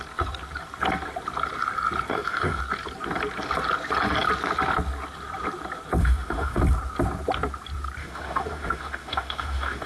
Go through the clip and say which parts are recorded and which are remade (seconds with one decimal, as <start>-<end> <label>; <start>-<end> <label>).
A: 0.0-2.1 recorded; 2.1-2.6 remade; 2.6-6.0 recorded; 6.0-6.6 remade; 6.6-8.0 recorded; 8.0-9.9 remade